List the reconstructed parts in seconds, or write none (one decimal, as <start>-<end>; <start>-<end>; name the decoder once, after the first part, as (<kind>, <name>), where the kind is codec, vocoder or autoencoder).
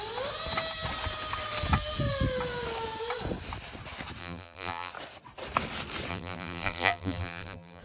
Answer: 4.2-4.9 (vocoder, BigVGAN v2); 6.1-7.8